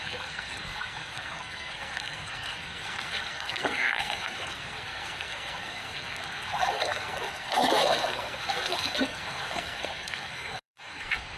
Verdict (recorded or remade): remade